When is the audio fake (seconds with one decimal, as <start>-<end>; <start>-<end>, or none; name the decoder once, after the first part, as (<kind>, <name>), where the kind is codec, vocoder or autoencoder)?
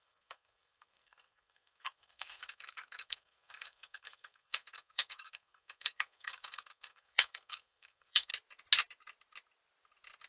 0.0-8.3 (codec, SNAC)